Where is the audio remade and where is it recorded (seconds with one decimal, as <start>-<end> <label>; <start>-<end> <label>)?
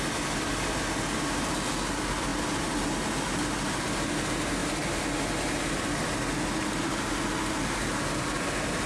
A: 0.0-8.9 recorded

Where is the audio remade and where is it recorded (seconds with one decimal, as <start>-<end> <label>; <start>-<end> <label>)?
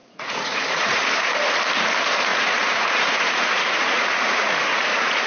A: 0.0-1.1 remade; 1.1-2.3 recorded; 2.3-5.3 remade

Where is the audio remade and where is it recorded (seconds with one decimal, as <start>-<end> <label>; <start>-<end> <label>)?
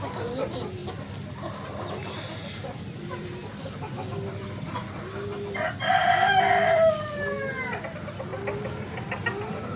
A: 0.0-9.8 recorded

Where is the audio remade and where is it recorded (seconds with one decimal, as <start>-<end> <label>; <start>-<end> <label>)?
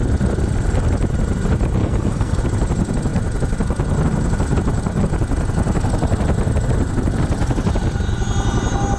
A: 0.0-1.8 recorded; 1.8-2.4 remade; 2.4-9.0 recorded